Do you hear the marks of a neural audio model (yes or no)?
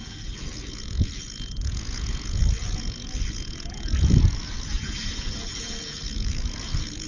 yes